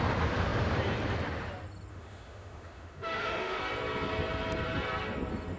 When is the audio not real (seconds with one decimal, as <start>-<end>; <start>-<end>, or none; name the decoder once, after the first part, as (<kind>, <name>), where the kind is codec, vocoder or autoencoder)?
1.9-3.6 (autoencoder, DAC-VAE)